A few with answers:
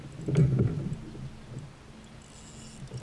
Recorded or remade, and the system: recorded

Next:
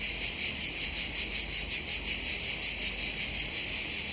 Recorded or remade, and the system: recorded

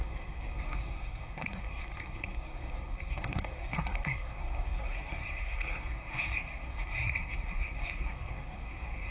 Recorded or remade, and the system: remade, codec, SNAC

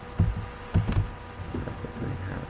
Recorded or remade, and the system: recorded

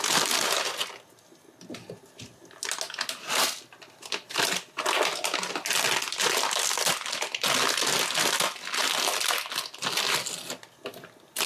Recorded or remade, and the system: recorded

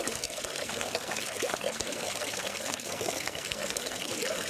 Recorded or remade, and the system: remade, codec, SNAC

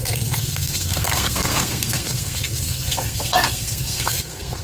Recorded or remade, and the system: remade, codec, SNAC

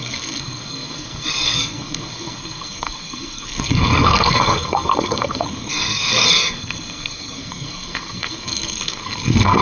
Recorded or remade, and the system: remade, codec, SNAC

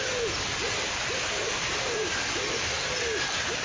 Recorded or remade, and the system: recorded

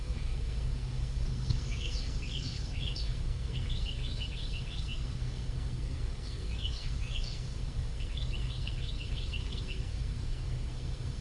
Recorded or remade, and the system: remade, codec, SNAC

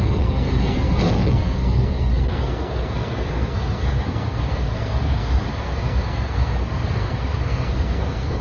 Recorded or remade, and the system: remade, codec, SNAC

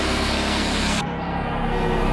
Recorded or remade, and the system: remade, codec, SNAC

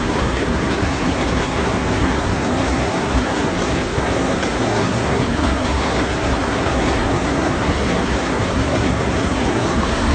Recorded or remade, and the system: remade, codec, SNAC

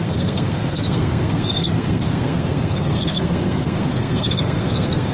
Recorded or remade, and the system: remade, codec, SNAC